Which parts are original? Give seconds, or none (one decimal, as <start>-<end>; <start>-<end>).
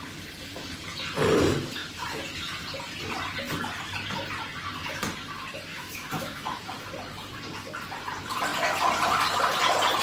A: 0.0-5.7; 6.7-10.0